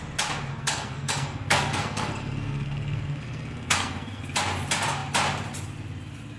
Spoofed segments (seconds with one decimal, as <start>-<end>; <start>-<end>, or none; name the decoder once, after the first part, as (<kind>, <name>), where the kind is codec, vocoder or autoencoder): 0.5-4.2 (codec, SNAC)

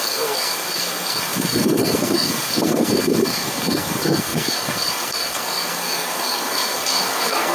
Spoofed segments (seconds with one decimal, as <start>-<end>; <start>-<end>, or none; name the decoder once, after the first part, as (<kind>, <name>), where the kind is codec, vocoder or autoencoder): 0.0-7.5 (codec, SNAC)

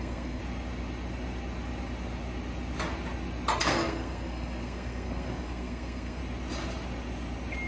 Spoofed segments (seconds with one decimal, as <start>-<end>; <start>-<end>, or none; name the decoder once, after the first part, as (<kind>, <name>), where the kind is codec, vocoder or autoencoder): 0.0-0.4 (codec, SNAC); 3.6-6.2